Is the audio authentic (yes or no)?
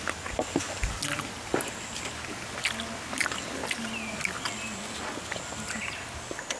yes